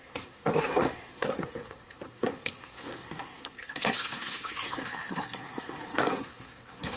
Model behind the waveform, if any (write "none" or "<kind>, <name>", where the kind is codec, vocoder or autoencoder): codec, SNAC